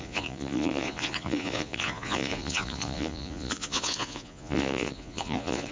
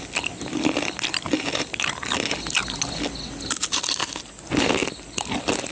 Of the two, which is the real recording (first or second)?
second